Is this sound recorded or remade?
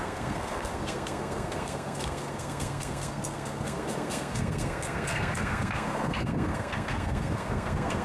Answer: remade